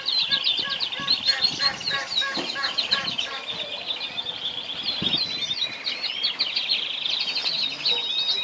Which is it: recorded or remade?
recorded